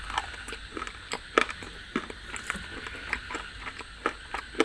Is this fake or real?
real